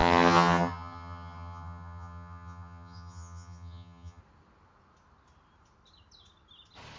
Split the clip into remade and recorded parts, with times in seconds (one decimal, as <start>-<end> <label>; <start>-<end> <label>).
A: 0.0-4.2 remade; 4.2-7.0 recorded